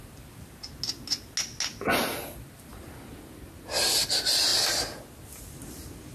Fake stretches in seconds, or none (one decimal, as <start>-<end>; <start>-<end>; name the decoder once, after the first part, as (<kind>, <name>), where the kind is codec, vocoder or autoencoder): none